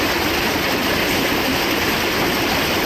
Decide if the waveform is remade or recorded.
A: recorded